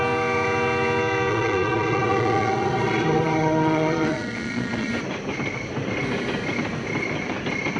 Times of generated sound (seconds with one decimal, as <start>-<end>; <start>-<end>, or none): 1.3-4.9